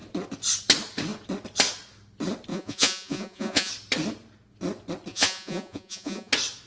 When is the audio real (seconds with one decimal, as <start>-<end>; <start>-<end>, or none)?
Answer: 0.0-2.5; 3.7-5.1; 6.3-6.7